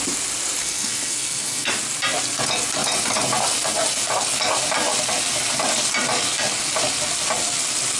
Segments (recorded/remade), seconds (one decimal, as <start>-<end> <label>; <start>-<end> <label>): 0.0-0.6 recorded; 0.6-1.7 remade; 1.7-8.0 recorded